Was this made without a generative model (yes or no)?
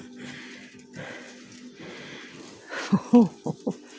yes